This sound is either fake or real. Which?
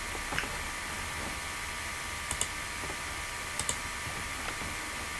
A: real